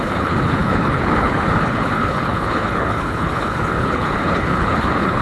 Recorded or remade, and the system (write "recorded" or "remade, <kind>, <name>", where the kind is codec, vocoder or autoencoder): remade, codec, HILCodec